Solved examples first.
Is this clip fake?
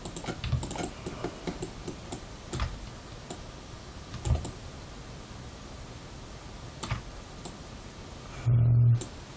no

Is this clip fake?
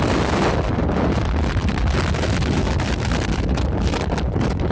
yes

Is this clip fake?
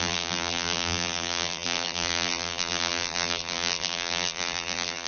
yes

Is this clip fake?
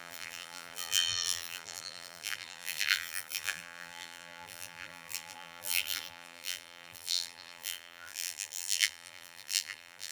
yes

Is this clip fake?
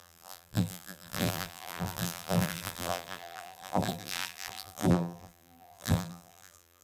yes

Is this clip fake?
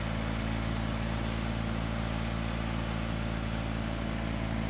no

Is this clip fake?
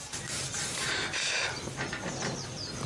yes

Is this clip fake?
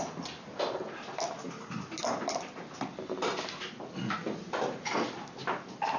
no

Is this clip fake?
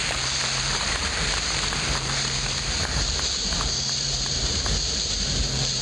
yes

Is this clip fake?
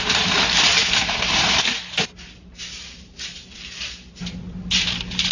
yes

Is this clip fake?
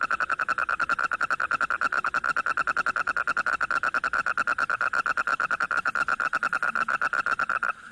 no